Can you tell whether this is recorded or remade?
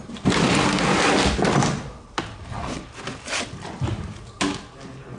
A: recorded